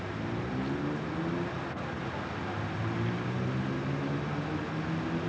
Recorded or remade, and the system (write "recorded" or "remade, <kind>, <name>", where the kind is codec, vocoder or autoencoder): recorded